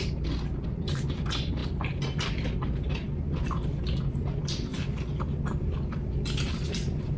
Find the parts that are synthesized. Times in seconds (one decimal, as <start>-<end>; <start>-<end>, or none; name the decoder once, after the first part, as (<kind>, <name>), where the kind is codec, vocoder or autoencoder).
none